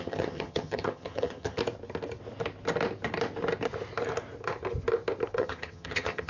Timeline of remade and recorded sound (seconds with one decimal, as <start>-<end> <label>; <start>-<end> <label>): 0.0-1.6 remade; 1.6-5.4 recorded; 5.4-6.3 remade